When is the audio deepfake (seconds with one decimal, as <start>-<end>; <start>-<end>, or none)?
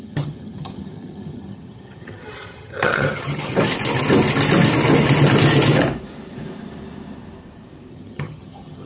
0.0-3.5; 7.9-8.9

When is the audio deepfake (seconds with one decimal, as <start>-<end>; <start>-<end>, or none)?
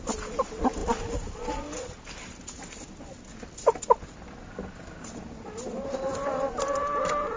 none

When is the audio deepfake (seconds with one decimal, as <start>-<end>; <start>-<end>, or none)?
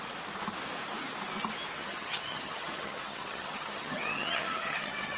1.8-5.2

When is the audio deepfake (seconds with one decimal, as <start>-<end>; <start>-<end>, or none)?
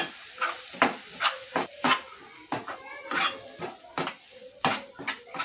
none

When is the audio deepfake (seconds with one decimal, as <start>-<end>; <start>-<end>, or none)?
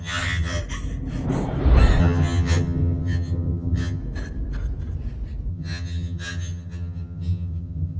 0.0-0.6; 2.0-4.0; 5.5-8.0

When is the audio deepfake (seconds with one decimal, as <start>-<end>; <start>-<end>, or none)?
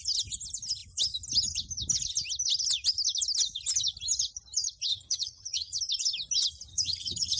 4.9-5.8; 6.7-7.4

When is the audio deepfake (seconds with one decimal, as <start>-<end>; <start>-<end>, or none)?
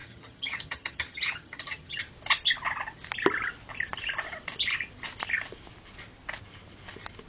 0.0-2.0